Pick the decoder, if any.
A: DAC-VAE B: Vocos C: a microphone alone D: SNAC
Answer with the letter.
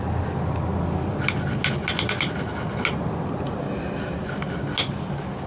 C